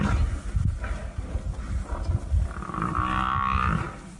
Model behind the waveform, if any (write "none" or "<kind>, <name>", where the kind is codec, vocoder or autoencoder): none